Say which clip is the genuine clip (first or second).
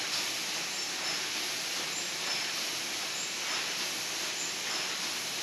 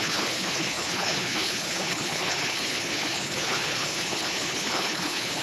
first